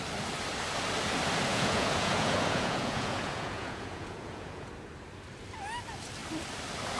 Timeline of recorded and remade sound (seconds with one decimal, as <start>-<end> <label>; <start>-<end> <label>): 0.0-1.5 recorded; 1.5-4.7 remade; 4.7-7.0 recorded